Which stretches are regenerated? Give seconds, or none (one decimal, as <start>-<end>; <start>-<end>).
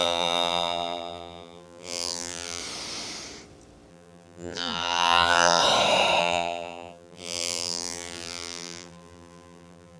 0.0-2.6; 3.9-5.6; 6.2-10.0